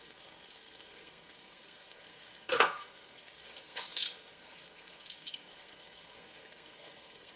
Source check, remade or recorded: remade